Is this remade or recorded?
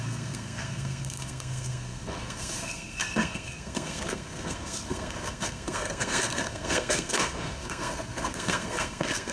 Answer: remade